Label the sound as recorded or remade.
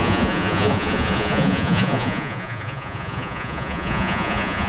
remade